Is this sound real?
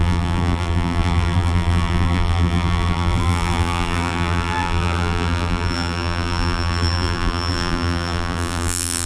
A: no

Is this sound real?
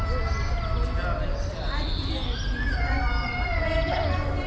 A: yes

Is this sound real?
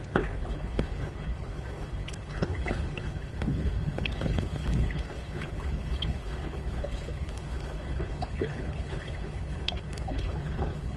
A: no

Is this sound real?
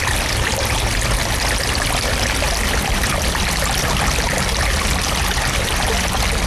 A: yes